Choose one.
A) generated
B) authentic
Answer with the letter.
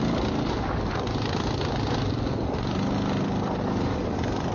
B